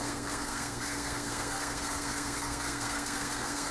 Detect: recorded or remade remade